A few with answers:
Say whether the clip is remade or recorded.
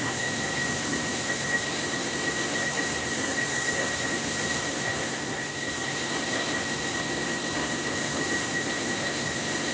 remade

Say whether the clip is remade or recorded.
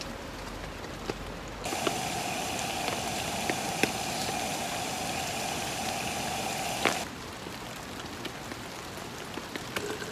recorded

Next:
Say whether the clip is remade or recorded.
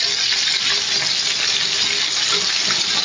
recorded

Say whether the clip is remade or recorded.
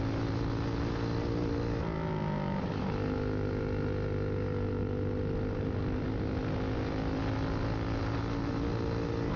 recorded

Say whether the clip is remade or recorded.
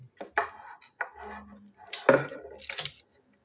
recorded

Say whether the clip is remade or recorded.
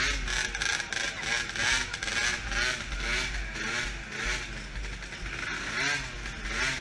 recorded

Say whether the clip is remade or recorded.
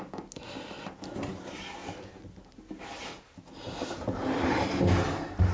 recorded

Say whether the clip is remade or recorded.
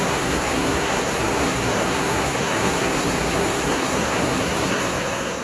remade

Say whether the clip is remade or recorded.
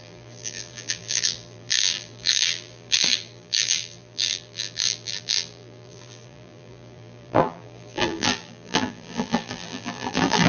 remade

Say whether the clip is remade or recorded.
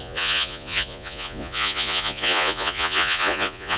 remade